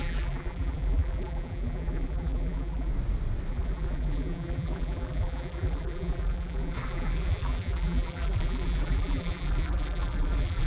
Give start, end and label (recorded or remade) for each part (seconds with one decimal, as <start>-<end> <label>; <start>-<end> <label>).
0.0-2.9 remade; 2.9-3.5 recorded; 3.5-10.7 remade

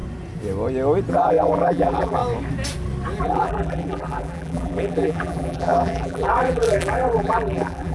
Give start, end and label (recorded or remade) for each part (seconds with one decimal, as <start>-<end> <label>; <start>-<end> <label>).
0.0-1.1 recorded; 1.1-2.2 remade; 2.2-3.2 recorded; 3.2-7.9 remade

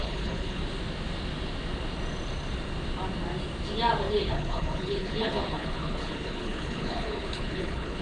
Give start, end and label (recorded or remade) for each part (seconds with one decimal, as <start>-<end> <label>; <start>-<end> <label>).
0.0-0.6 remade; 0.6-4.1 recorded; 4.1-8.0 remade